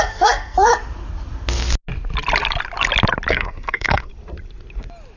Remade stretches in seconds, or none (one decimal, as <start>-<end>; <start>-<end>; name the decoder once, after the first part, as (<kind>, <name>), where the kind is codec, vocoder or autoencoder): 0.0-0.7 (codec, SNAC); 3.3-4.1